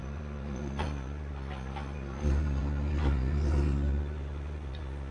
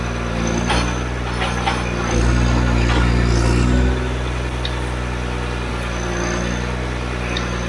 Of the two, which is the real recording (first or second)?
second